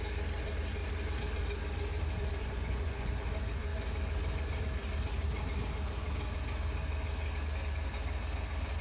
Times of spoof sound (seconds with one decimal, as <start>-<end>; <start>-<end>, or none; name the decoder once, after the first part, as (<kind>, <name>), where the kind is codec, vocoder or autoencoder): 2.4-3.2 (vocoder, Vocos)

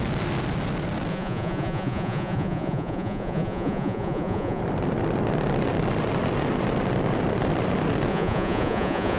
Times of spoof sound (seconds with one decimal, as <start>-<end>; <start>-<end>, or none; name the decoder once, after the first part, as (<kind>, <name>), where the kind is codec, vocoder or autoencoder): 1.1-4.6 (vocoder, Vocos); 8.1-9.2

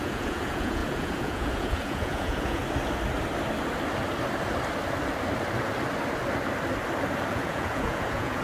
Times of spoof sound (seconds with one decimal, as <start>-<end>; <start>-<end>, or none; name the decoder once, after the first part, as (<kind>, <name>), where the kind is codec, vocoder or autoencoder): 0.0-2.6 (vocoder, Vocos); 7.3-8.4

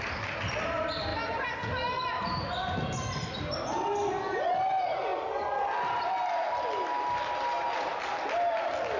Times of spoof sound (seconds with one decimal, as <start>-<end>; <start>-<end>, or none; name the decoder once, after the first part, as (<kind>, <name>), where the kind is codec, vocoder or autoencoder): none

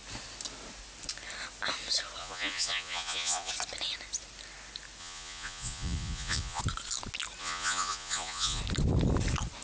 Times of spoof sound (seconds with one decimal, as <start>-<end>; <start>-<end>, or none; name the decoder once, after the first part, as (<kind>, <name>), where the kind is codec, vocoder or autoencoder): 2.2-3.5 (vocoder, Vocos); 5.0-6.6; 7.4-8.6